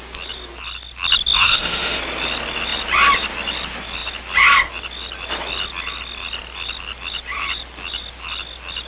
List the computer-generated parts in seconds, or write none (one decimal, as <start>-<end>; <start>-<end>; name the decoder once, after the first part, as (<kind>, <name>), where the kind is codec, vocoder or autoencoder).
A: 1.4-2.0 (autoencoder, DAC-VAE)